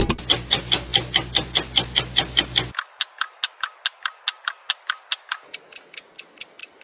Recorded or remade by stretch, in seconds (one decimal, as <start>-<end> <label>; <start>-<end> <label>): 0.0-6.8 recorded

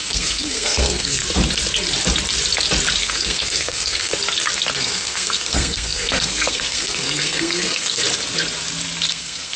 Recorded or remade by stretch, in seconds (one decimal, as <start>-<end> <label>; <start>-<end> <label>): 0.0-1.2 remade; 1.2-3.0 recorded; 3.0-4.1 remade; 4.1-4.8 recorded; 4.8-8.0 remade; 8.0-9.1 recorded; 9.1-9.6 remade

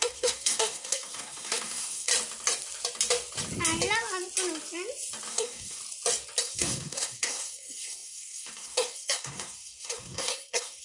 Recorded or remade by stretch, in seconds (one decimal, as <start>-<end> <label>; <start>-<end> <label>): 0.0-2.1 remade; 2.1-5.3 recorded; 5.3-5.8 remade; 5.8-6.4 recorded; 6.4-10.8 remade

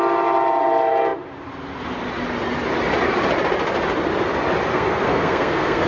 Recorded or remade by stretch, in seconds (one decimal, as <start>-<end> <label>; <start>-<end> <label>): 0.0-4.7 recorded; 4.7-5.9 remade